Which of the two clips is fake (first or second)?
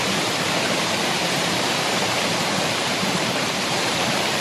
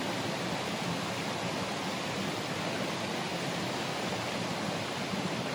first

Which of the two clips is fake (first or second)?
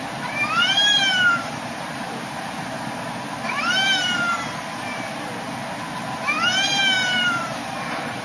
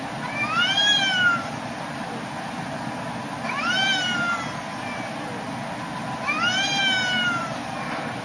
first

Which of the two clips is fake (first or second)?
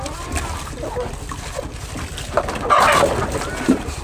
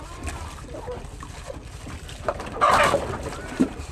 second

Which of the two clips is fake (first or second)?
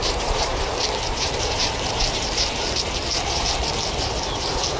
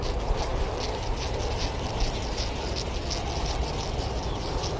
first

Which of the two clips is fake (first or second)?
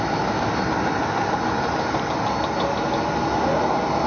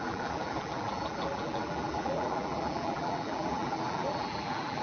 second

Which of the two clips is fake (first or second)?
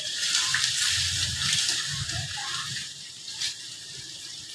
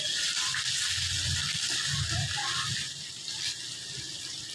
first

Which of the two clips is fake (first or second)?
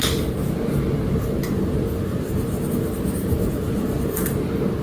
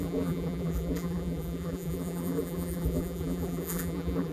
second